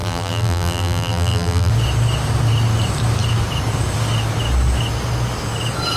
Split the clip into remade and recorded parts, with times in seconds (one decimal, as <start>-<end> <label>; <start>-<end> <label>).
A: 0.0-1.7 remade; 1.7-6.0 recorded